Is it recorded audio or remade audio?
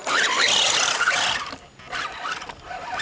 recorded